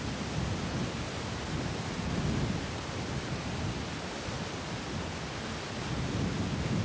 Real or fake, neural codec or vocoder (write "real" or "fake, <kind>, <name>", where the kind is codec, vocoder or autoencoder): real